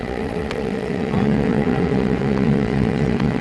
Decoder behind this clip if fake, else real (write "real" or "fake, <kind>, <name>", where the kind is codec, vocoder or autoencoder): fake, vocoder, WaveNeXt